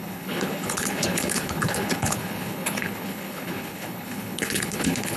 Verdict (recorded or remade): remade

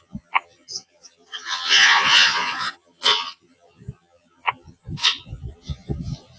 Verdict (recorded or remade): remade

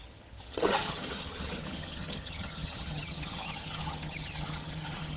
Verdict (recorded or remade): remade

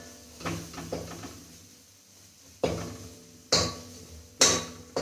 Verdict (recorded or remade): recorded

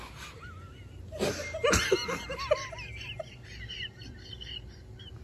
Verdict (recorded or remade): recorded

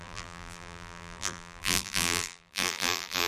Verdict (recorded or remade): remade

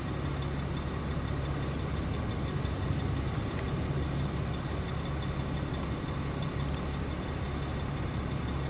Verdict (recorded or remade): recorded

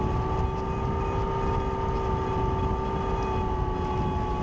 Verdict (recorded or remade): recorded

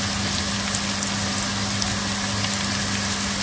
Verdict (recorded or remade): recorded